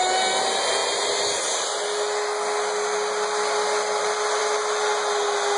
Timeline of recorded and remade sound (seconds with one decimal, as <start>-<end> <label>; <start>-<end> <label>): 0.0-5.6 recorded